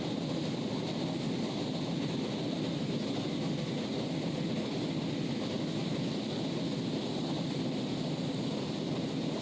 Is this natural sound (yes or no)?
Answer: yes